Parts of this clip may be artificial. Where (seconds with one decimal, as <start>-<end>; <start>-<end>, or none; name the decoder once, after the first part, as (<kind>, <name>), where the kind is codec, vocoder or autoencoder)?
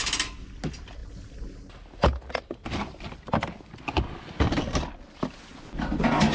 none